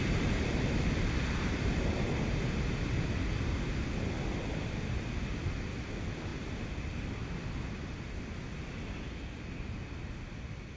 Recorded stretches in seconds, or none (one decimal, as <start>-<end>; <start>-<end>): 2.1-10.8